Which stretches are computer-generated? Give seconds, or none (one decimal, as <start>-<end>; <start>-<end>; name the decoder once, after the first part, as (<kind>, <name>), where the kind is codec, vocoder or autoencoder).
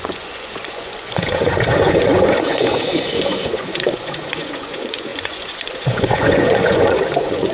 0.0-7.5 (vocoder, Vocos)